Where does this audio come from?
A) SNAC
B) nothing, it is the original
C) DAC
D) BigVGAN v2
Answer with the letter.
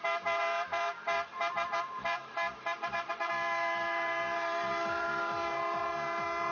D